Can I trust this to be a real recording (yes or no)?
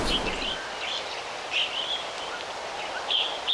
yes